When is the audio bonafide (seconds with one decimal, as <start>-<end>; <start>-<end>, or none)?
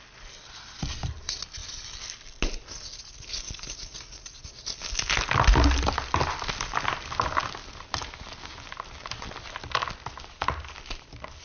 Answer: 0.0-11.4